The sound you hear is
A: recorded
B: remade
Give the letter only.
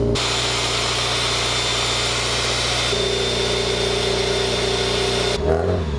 A